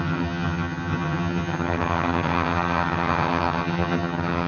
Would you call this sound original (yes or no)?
no